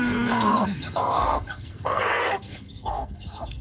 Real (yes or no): no